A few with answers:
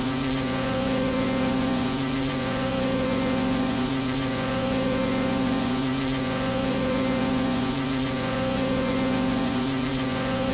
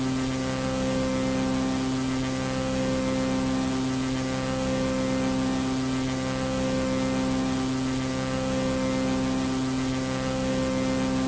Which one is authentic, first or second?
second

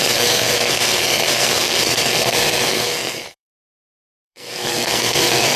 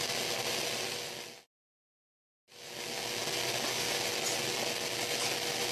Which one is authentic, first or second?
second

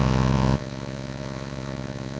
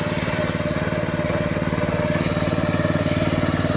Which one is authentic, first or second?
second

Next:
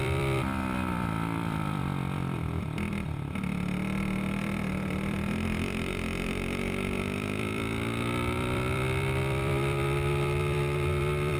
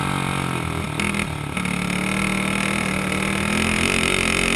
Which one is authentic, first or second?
second